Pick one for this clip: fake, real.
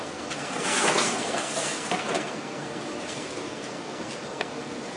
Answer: fake